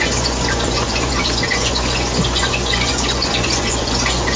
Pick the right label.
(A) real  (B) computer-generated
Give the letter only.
B